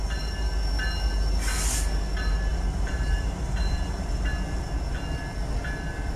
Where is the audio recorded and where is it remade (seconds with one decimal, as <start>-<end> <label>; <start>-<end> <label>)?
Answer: 0.0-2.5 recorded; 2.5-4.1 remade; 4.1-6.2 recorded